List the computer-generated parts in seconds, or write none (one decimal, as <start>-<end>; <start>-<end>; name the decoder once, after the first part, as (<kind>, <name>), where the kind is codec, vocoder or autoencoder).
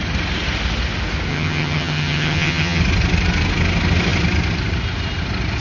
1.3-2.8 (vocoder, HiFi-GAN)